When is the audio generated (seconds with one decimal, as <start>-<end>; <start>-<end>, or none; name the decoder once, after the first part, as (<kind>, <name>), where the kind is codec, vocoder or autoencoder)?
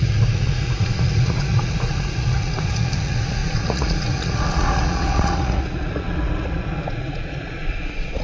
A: 0.0-8.2 (vocoder, Vocos)